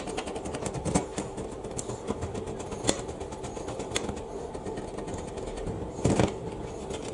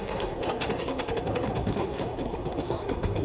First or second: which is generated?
second